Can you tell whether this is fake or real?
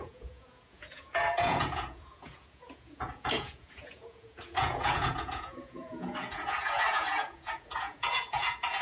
fake